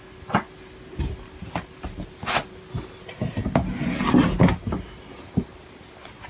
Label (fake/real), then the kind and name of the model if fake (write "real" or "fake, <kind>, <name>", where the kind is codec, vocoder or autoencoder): real